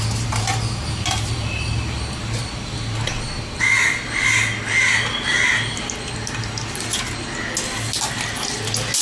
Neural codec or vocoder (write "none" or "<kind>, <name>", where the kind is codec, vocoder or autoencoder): none